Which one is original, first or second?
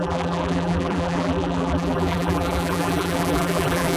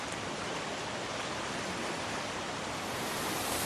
second